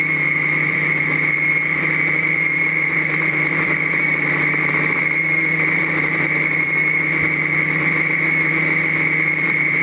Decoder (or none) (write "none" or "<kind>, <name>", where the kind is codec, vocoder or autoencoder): vocoder, BigVGAN v2